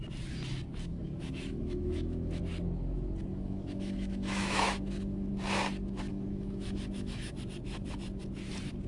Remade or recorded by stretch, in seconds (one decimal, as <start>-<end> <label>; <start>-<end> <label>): 0.0-0.9 recorded; 0.9-2.4 remade; 2.4-3.3 recorded; 3.3-5.3 remade; 5.3-6.1 recorded; 6.1-7.3 remade; 7.3-8.9 recorded